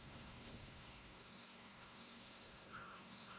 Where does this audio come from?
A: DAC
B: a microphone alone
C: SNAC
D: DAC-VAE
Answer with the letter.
C